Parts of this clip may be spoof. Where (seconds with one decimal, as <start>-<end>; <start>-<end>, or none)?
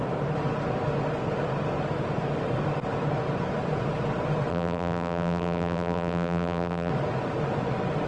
4.5-6.9